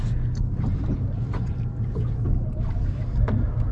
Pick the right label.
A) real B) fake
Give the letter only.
A